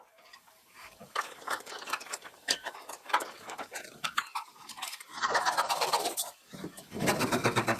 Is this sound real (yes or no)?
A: no